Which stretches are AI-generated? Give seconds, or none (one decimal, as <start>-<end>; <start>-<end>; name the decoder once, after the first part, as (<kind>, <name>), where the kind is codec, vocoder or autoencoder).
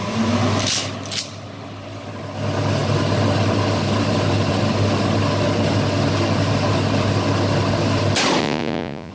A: 8.4-9.1 (vocoder, Vocos)